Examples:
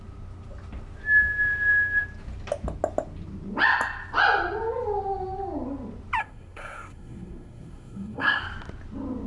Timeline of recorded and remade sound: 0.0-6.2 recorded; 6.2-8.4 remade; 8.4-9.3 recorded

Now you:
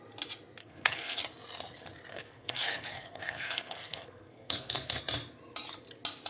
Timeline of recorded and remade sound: 0.0-0.6 recorded; 0.6-1.2 remade; 1.2-2.1 recorded; 2.1-5.0 remade; 5.0-6.3 recorded

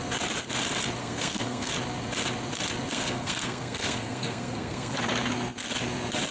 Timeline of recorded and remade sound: 0.0-1.0 recorded; 1.0-1.7 remade; 1.7-2.9 recorded; 2.9-5.0 remade; 5.0-6.3 recorded

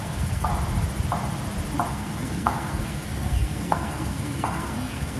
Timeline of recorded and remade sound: 0.0-0.5 remade; 0.5-1.9 recorded; 1.9-5.2 remade

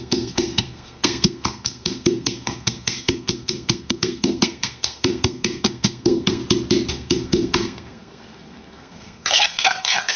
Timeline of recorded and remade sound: 0.0-6.4 remade; 6.4-6.9 recorded; 6.9-10.2 remade

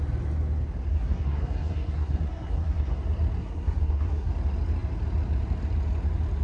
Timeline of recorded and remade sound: 0.0-0.9 recorded; 0.9-3.0 remade; 3.0-3.4 recorded; 3.4-4.3 remade; 4.3-6.4 recorded